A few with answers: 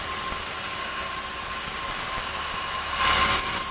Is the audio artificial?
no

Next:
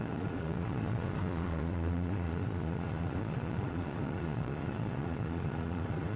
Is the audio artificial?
yes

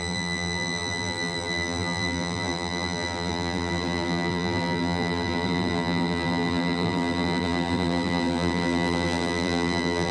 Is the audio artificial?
yes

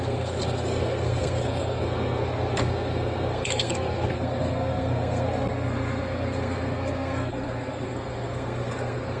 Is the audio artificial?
yes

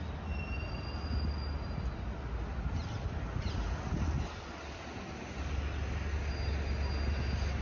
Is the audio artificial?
no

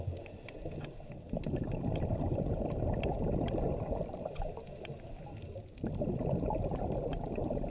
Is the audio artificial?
no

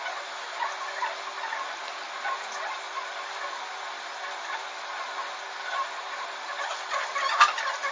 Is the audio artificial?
no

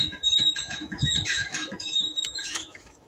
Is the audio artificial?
yes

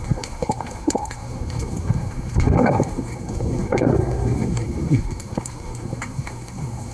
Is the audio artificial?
yes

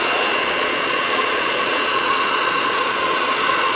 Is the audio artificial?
yes